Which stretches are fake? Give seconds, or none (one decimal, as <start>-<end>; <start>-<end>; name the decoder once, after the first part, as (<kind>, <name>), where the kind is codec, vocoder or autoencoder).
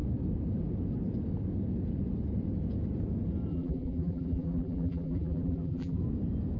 3.5-6.0 (vocoder, BigVGAN v2)